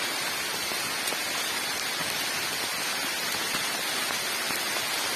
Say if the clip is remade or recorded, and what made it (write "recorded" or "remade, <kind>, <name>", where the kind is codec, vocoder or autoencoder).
recorded